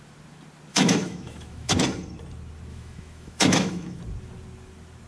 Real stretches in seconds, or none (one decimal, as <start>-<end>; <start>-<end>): 0.0-0.7; 1.7-2.7; 4.0-5.1